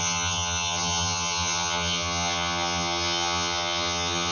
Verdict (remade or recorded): remade